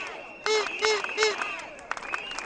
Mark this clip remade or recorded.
recorded